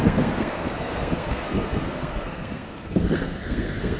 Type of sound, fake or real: fake